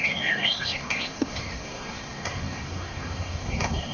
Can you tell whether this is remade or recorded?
remade